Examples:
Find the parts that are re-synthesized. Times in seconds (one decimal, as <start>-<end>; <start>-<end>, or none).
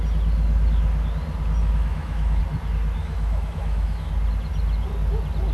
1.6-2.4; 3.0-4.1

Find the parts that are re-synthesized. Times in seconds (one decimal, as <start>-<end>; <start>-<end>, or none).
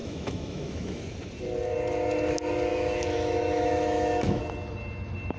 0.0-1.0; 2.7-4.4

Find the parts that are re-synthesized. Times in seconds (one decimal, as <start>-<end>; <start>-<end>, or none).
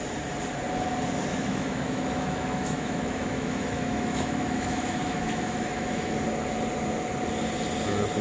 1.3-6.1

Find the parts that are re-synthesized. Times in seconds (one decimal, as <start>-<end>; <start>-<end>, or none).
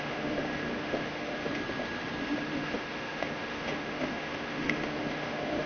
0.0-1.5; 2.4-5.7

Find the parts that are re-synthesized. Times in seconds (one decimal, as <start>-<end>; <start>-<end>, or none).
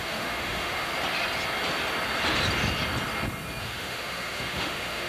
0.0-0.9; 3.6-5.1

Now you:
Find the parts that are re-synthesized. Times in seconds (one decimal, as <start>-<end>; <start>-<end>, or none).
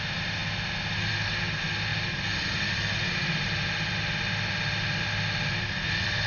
none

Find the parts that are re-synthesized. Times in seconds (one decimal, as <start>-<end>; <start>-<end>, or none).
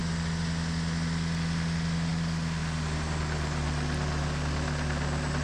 none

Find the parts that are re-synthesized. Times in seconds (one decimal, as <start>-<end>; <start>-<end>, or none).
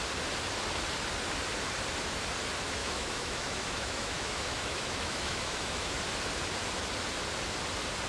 2.8-6.0